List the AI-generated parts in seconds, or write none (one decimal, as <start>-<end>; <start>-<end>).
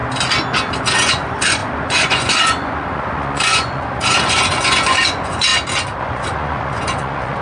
0.9-5.5; 6.0-7.4